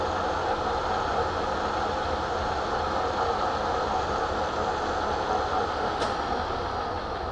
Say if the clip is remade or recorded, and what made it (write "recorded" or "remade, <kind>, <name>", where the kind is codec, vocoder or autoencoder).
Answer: recorded